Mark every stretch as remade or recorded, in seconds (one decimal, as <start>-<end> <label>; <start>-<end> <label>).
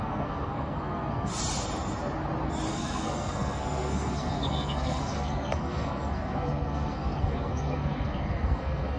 0.0-1.3 remade; 1.3-2.7 recorded; 2.7-9.0 remade